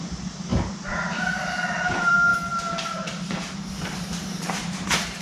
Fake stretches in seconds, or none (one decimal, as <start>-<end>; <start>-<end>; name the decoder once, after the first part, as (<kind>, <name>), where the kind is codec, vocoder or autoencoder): 0.0-0.5 (vocoder, BigVGAN v2); 1.1-5.2